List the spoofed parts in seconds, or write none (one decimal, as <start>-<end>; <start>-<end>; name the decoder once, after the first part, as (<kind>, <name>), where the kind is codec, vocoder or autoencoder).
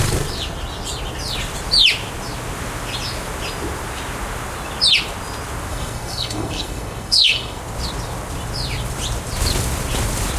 5.7-7.6 (codec, SNAC)